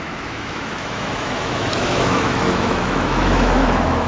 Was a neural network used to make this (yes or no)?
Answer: yes